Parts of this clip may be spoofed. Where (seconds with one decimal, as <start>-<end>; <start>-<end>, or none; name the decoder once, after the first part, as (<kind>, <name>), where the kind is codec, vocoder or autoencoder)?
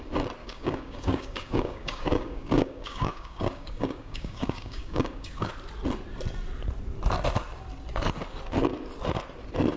0.4-5.5 (codec, DAC)